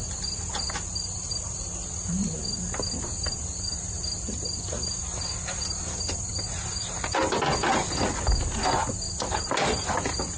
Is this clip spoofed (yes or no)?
no